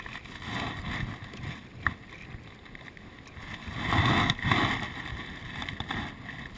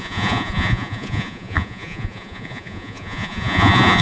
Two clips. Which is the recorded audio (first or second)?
first